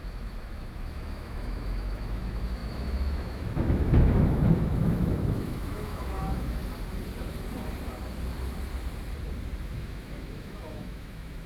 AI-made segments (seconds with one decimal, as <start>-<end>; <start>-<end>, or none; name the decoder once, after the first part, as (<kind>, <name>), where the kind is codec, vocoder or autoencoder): 0.0-6.6 (autoencoder, DAC-VAE); 9.6-11.5